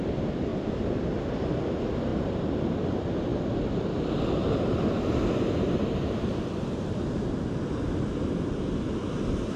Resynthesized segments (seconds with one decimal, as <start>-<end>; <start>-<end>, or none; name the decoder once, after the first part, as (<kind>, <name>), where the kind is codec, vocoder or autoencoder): none